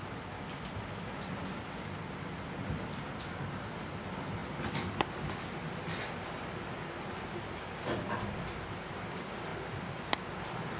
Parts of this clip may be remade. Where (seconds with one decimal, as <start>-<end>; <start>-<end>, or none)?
none